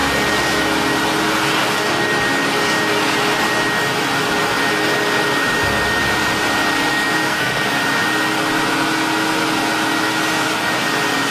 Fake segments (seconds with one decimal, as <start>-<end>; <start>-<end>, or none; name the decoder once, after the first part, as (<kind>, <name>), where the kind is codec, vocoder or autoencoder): 6.9-7.7 (codec, SNAC)